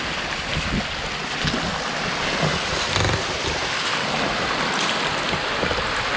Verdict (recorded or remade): recorded